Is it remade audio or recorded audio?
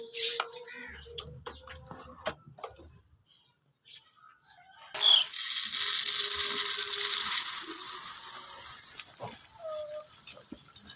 recorded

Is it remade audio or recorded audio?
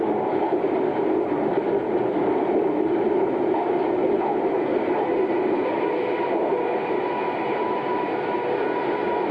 recorded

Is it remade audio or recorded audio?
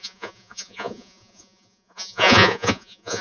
remade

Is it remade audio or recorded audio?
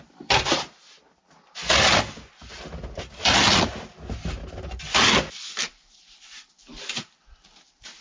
recorded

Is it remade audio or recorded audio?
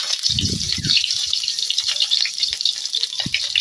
remade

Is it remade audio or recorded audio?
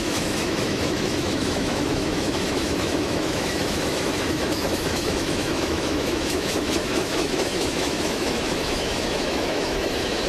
remade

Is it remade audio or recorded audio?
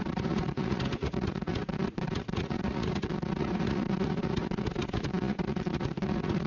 remade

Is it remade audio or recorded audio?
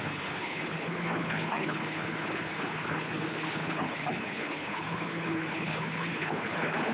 remade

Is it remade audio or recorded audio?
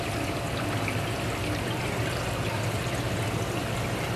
recorded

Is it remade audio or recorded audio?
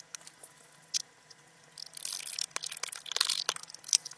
recorded